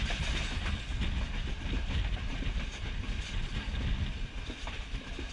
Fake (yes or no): no